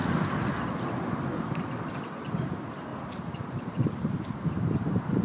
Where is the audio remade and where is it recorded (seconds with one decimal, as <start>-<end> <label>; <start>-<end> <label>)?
0.0-0.8 recorded; 0.8-5.2 remade